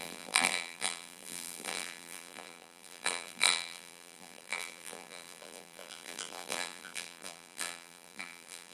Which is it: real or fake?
fake